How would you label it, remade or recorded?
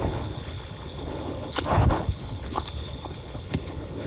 remade